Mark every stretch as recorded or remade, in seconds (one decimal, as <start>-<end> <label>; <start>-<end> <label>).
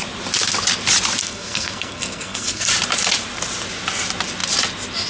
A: 0.0-1.2 recorded; 1.2-2.7 remade; 2.7-5.1 recorded